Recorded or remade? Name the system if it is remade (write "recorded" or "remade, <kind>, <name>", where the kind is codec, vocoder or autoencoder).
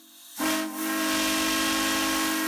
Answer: recorded